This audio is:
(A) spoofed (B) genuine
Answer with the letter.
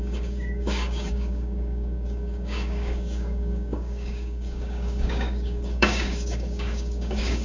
A